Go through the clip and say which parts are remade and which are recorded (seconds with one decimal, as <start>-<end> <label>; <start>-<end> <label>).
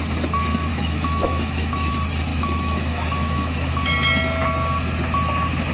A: 0.0-0.7 recorded; 0.7-1.9 remade; 1.9-2.3 recorded; 2.3-3.7 remade; 3.7-5.7 recorded